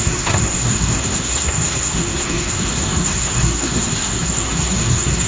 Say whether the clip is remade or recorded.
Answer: remade